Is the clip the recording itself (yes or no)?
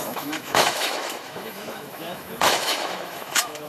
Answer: no